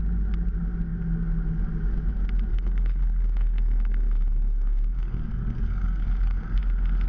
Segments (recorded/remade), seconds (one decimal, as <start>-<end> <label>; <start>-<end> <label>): 0.0-2.5 recorded; 2.5-6.6 remade; 6.6-7.1 recorded